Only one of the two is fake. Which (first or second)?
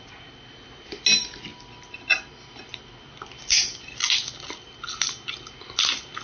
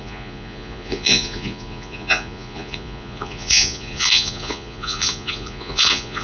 second